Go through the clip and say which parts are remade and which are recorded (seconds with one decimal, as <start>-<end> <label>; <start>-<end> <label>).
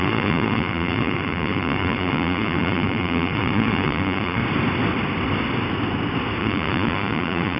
0.0-4.4 remade; 4.4-6.4 recorded; 6.4-7.6 remade